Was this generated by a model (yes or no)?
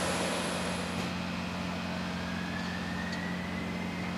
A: no